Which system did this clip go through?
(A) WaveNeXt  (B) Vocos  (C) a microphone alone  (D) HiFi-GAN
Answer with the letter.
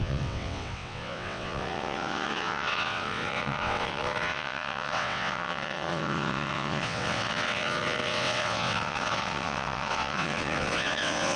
A